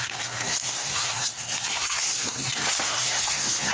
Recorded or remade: remade